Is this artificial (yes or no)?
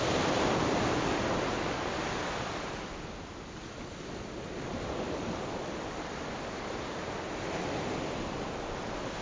no